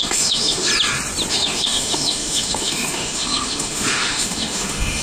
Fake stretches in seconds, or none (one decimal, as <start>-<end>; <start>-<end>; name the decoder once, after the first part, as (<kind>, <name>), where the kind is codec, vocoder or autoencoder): 0.0-0.7 (autoencoder, DAC-VAE); 1.3-5.0